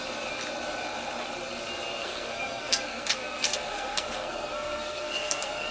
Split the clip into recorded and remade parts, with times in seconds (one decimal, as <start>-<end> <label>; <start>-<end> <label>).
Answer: 0.0-2.0 recorded; 2.0-5.7 remade